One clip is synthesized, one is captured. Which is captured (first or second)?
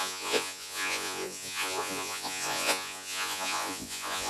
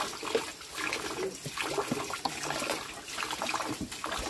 second